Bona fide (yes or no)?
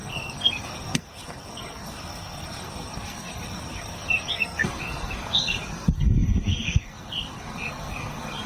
no